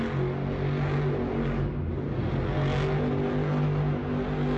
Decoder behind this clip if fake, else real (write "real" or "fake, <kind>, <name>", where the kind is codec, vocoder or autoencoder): real